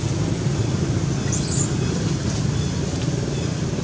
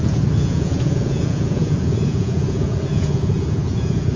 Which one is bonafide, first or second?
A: first